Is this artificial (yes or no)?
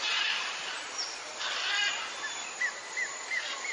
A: no